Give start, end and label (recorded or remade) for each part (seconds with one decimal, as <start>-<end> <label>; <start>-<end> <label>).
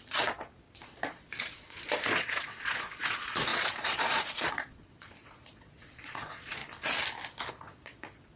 0.0-6.6 remade; 6.6-7.5 recorded; 7.5-8.4 remade